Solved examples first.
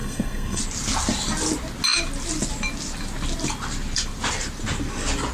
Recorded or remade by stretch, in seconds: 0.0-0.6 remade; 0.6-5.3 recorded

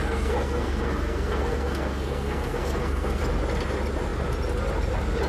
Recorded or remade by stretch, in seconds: 0.0-3.2 remade; 3.2-5.3 recorded